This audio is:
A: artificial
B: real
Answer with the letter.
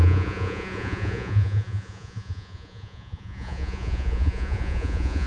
A